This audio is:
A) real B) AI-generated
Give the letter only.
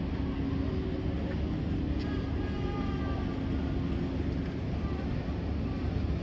A